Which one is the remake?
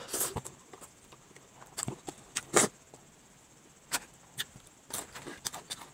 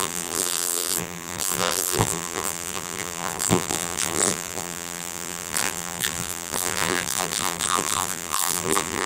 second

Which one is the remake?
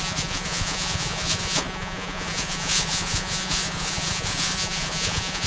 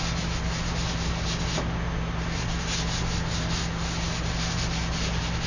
first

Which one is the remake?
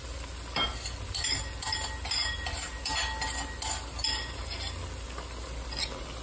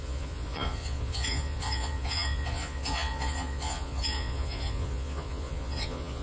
second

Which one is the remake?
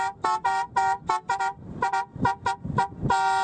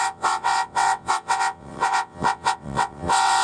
second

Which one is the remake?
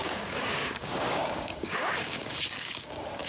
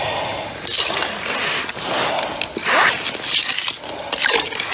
first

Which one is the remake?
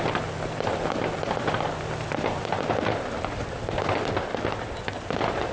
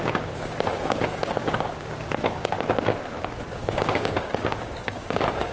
second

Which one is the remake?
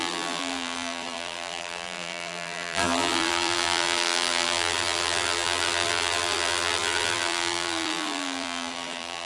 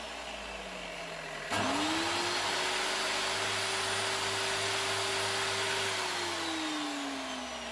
first